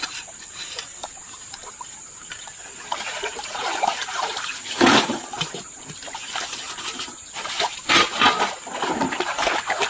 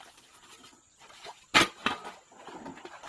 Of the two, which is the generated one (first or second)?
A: first